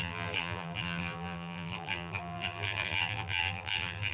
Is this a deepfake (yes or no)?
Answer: yes